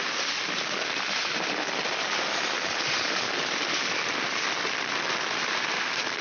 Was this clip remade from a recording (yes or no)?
no